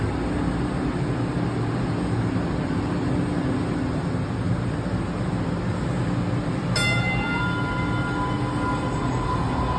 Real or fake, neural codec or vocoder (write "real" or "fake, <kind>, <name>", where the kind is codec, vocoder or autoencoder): real